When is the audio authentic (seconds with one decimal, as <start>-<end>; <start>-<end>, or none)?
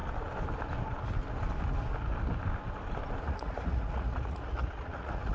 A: 0.0-3.2